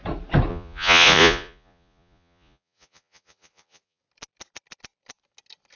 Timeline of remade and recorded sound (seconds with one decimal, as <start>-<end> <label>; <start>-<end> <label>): 0.0-0.5 recorded; 0.5-4.0 remade; 4.0-5.8 recorded